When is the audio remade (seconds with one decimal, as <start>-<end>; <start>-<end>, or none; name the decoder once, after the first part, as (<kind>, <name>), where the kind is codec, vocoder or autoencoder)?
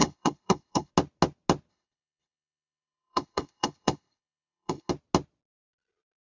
0.0-0.9 (codec, HILCodec); 1.7-4.9